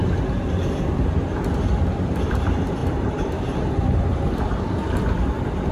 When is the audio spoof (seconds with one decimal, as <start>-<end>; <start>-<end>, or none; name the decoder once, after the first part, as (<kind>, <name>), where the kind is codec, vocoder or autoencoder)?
2.8-4.6 (vocoder, BigVGAN v2)